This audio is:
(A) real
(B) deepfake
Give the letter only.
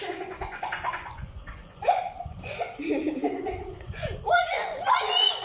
B